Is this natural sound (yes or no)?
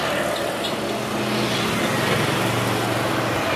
yes